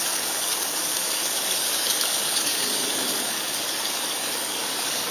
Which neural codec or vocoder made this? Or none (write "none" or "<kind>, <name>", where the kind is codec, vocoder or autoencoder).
codec, DAC